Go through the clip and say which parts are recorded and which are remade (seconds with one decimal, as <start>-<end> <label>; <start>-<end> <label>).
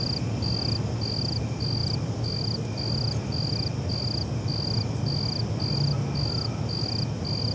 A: 0.0-7.5 recorded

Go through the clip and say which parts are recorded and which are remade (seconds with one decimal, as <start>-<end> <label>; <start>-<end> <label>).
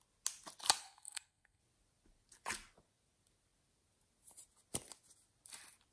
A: 0.0-0.8 recorded; 0.8-1.6 remade; 1.6-5.9 recorded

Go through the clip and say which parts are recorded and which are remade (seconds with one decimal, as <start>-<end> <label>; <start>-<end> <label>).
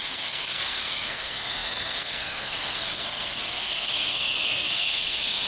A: 0.0-5.5 remade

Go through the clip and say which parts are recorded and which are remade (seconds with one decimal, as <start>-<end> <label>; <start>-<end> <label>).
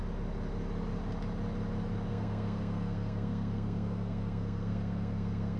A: 0.0-2.1 recorded; 2.1-5.6 remade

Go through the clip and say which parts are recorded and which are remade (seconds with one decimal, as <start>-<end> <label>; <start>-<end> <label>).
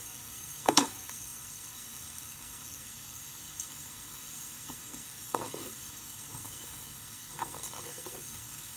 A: 0.0-8.8 remade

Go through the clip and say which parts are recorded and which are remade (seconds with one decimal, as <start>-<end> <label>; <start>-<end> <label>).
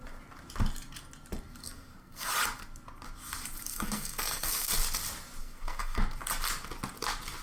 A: 0.0-1.6 recorded; 1.6-2.3 remade; 2.3-3.7 recorded; 3.7-4.7 remade; 4.7-5.4 recorded; 5.4-6.0 remade; 6.0-7.4 recorded